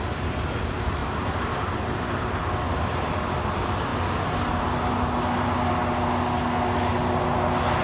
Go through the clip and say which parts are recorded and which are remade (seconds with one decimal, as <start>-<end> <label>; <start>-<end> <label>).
0.0-1.0 recorded; 1.0-2.4 remade; 2.4-7.8 recorded